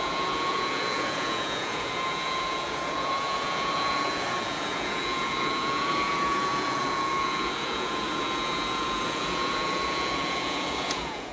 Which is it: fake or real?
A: fake